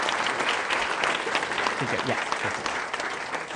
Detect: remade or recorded recorded